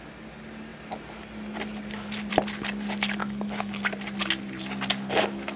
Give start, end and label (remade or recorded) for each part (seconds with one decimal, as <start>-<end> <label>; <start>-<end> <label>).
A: 0.0-3.2 recorded; 3.2-3.7 remade; 3.7-5.6 recorded